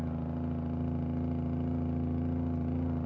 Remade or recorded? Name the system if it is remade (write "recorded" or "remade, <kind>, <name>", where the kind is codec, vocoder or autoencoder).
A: recorded